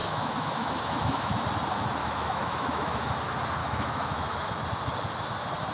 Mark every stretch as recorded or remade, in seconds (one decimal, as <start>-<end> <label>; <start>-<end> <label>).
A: 0.0-1.4 remade; 1.4-2.0 recorded; 2.0-3.1 remade; 3.1-3.6 recorded; 3.6-4.5 remade; 4.5-5.7 recorded